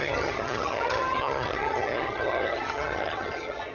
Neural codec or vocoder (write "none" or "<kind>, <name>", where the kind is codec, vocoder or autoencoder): vocoder, HiFi-GAN